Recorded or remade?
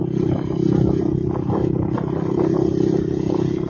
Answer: recorded